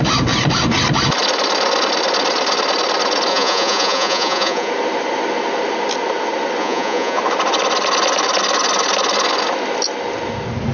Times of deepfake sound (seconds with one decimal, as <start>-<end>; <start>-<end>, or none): 3.3-4.7; 6.6-7.2